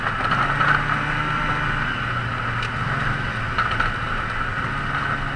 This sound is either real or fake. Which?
real